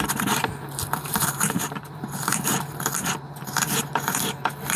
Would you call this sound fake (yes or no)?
yes